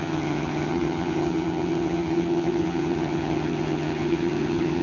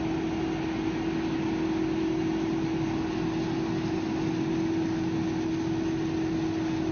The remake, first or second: first